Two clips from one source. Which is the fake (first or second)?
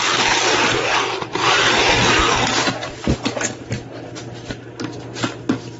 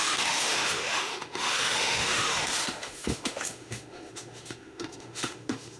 second